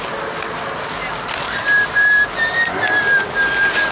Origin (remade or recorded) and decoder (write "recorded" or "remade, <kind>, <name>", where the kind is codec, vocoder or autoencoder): recorded